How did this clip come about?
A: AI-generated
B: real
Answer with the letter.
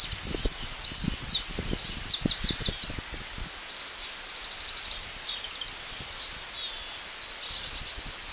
B